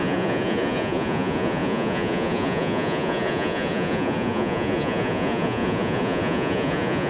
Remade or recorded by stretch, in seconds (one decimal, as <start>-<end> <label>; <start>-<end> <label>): 0.0-7.1 remade